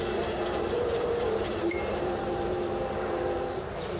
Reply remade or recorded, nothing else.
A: remade